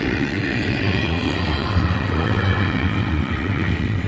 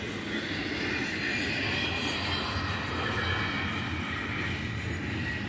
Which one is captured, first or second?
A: second